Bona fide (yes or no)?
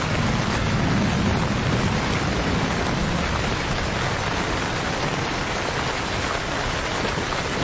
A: yes